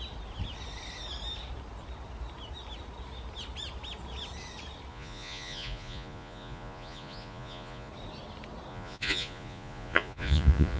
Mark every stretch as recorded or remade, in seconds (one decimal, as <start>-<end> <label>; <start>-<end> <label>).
0.0-4.9 recorded; 4.9-7.9 remade; 7.9-8.7 recorded; 8.7-10.8 remade